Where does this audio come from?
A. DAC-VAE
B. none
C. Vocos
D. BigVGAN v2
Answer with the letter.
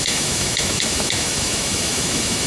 A